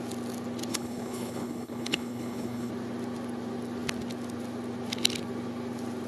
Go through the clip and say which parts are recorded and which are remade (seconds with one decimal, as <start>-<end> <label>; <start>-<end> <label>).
0.0-0.7 recorded; 0.7-2.7 remade; 2.7-6.1 recorded